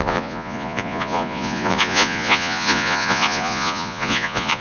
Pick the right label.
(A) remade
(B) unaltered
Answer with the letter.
A